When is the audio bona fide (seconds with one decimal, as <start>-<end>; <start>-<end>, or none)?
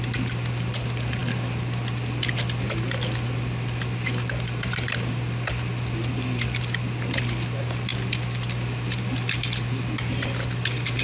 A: 0.0-11.0